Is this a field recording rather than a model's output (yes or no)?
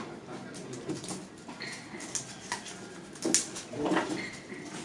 yes